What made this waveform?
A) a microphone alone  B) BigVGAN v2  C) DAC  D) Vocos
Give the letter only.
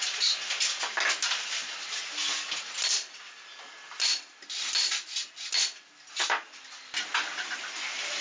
A